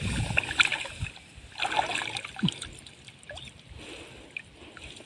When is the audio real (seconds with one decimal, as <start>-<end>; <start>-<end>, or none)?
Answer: 0.0-0.7; 3.8-5.1